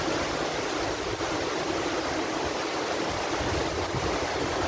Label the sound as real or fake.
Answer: real